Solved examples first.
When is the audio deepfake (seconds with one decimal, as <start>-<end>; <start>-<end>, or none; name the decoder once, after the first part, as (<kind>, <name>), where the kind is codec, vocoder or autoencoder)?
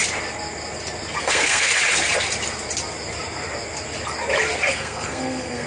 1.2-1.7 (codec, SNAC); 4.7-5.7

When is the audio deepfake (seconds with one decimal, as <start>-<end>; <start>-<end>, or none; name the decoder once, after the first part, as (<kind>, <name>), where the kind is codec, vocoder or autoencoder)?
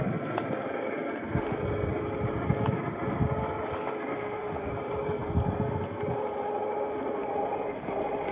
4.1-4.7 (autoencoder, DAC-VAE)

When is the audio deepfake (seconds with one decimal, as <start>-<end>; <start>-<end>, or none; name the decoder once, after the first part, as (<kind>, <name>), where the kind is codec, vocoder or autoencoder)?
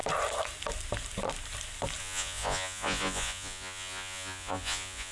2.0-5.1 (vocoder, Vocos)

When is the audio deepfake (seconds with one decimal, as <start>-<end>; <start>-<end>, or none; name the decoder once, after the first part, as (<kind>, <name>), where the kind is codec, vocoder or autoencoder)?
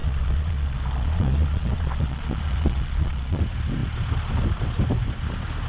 0.0-3.4 (vocoder, Vocos)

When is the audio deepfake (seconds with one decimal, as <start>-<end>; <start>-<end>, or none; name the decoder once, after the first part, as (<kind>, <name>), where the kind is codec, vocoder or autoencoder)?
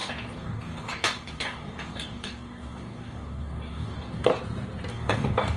0.0-4.3 (codec, DAC); 4.9-5.6